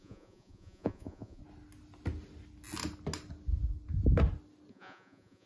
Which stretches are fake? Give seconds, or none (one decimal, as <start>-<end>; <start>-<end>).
0.0-1.4; 4.7-5.5